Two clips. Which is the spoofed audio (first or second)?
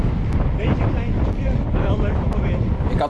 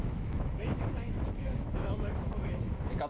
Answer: second